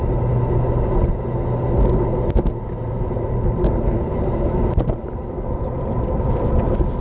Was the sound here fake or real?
real